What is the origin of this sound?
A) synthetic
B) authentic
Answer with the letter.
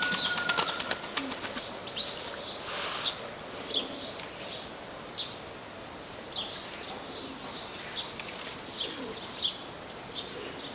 B